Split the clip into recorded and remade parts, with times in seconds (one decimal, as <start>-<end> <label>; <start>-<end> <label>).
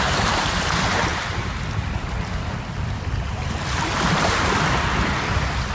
0.0-5.7 recorded